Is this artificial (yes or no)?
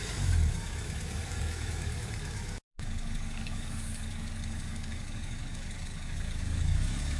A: yes